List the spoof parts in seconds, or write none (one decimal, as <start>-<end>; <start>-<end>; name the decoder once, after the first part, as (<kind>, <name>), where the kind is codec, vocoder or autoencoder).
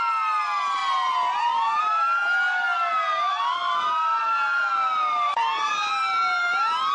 none